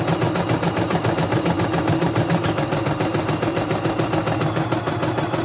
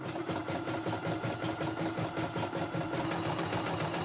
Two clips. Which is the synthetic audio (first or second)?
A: first